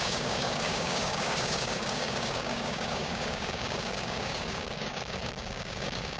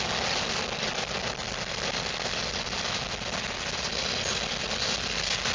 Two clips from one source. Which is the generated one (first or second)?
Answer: first